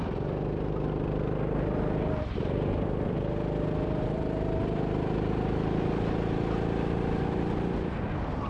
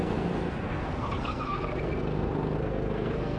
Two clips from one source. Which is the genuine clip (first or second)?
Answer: first